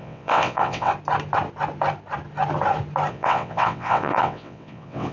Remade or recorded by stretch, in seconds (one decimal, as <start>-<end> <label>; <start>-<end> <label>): 0.0-0.9 remade; 0.9-3.1 recorded; 3.1-5.1 remade